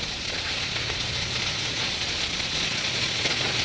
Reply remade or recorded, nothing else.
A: remade